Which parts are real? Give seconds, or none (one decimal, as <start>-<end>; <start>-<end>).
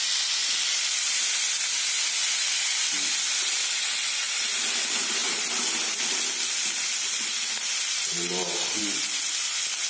0.0-9.9